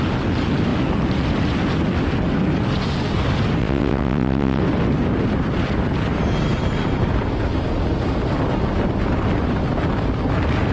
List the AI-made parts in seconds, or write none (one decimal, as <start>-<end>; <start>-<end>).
3.6-4.6